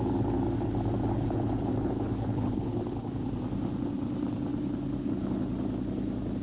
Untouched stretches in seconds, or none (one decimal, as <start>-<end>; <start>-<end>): 0.0-1.1; 3.2-6.4